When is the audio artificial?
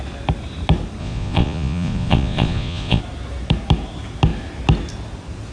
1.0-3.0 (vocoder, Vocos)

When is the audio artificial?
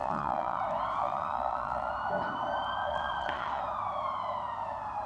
0.0-0.6 (vocoder, Vocos); 1.0-1.9; 2.8-3.6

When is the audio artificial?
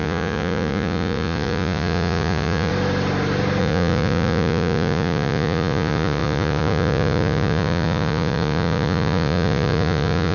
0.0-2.7 (vocoder, Vocos); 3.6-10.3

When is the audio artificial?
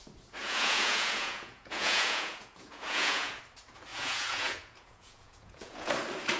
0.4-3.4 (vocoder, Vocos); 3.9-5.9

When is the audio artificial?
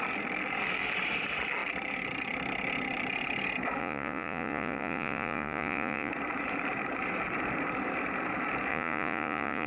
3.8-6.1 (vocoder, Vocos); 8.7-9.7